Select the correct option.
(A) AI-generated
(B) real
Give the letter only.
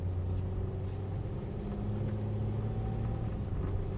B